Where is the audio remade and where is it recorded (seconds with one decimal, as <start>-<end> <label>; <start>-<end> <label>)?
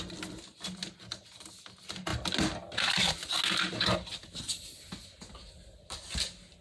0.0-6.6 recorded